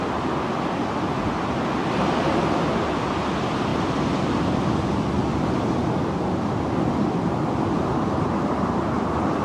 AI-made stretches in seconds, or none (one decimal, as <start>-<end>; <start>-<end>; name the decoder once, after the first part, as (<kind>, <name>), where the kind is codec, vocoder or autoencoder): none